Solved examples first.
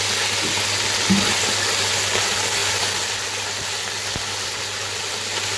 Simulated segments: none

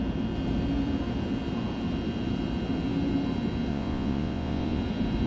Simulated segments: 3.7-4.8

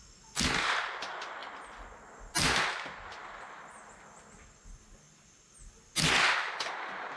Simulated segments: none

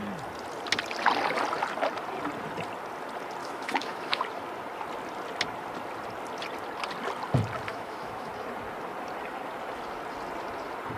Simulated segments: 3.4-4.2; 7.7-8.3